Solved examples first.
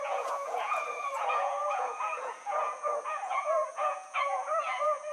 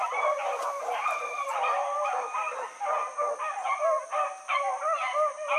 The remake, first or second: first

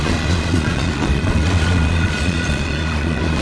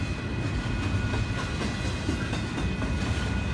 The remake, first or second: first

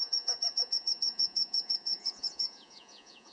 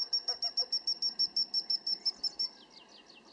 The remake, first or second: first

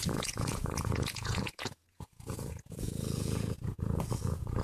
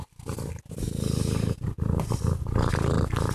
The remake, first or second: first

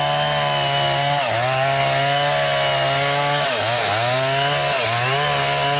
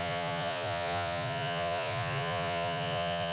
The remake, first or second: second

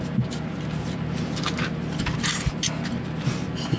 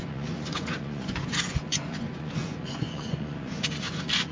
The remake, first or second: second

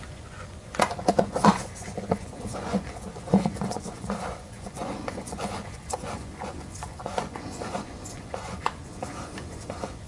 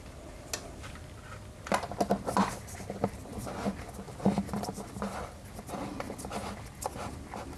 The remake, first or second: first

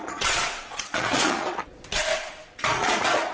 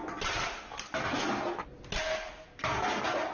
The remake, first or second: first